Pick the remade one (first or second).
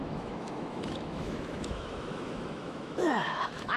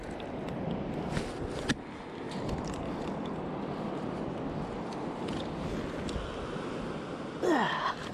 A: first